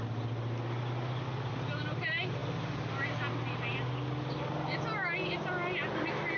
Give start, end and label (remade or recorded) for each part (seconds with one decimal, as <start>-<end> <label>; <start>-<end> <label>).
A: 0.0-5.2 recorded; 5.2-6.0 remade; 6.0-6.4 recorded